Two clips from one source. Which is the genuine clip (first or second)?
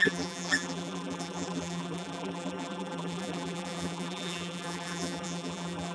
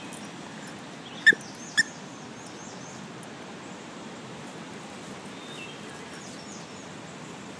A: second